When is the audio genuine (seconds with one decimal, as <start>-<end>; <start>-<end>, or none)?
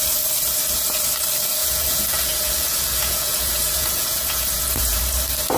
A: 0.0-1.6; 5.0-5.6